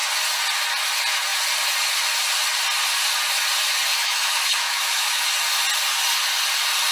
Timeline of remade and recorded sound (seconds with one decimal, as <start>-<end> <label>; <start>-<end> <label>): 0.0-3.9 recorded; 3.9-5.3 remade; 5.3-6.9 recorded